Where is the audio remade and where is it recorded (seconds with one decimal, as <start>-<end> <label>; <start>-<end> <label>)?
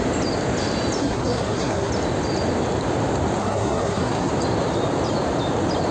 0.0-1.0 recorded; 1.0-1.9 remade; 1.9-3.4 recorded; 3.4-4.3 remade; 4.3-5.9 recorded